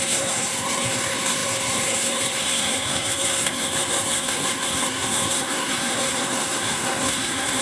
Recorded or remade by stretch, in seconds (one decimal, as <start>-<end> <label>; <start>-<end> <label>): 0.0-7.6 remade

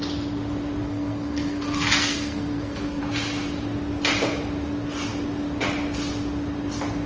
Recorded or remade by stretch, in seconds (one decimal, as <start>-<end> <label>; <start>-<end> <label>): 0.0-0.8 recorded; 0.8-3.0 remade; 3.0-7.1 recorded

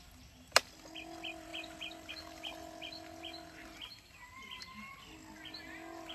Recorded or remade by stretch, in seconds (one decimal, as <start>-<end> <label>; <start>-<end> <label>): 0.0-6.1 recorded

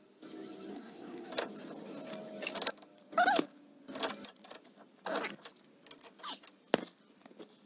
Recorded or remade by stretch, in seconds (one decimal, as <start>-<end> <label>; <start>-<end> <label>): 0.0-0.7 recorded; 0.7-1.3 remade; 1.3-7.7 recorded